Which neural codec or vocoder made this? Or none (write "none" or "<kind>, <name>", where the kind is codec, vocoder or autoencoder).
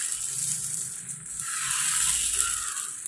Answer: none